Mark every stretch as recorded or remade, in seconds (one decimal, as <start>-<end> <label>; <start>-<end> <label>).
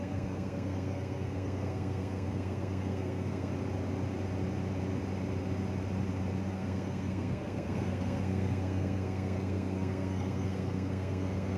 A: 0.0-3.5 remade; 3.5-6.5 recorded; 6.5-11.6 remade